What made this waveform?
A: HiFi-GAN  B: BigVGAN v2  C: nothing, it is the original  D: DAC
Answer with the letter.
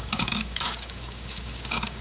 D